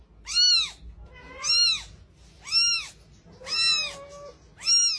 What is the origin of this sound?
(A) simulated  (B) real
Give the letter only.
B